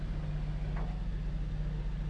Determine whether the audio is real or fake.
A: real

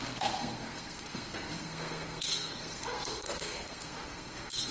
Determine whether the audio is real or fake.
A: fake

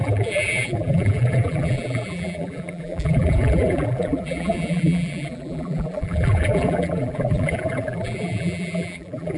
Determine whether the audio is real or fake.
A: fake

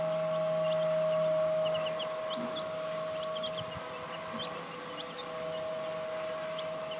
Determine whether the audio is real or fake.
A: real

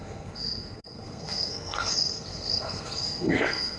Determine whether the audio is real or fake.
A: fake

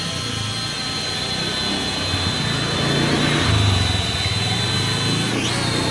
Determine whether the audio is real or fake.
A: real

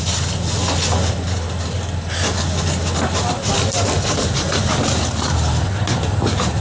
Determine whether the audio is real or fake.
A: real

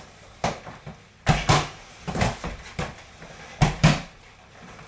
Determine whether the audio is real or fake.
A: real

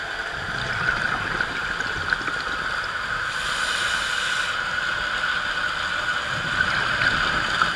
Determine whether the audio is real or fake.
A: real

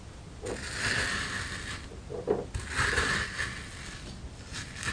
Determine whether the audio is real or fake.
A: real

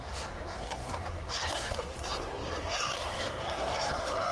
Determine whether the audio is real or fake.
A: fake